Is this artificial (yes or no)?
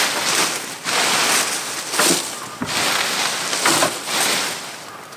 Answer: no